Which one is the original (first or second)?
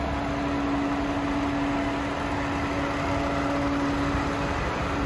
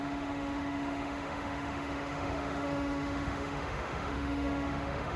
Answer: first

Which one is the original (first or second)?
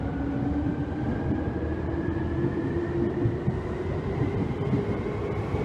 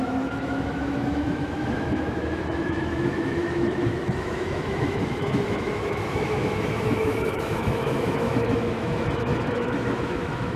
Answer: first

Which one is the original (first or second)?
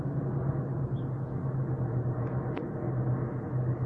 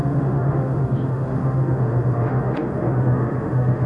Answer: first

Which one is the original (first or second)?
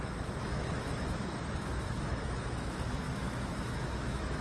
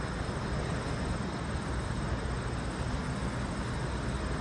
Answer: second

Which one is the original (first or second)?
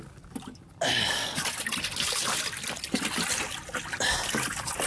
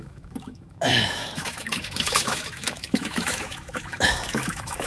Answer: first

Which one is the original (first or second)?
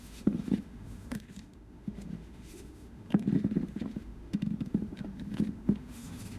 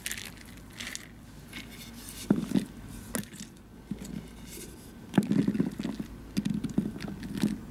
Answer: second